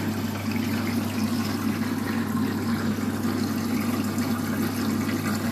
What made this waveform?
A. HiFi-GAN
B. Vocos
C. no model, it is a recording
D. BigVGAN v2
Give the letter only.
C